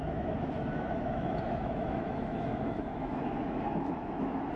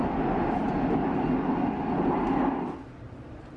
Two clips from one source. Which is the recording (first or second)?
second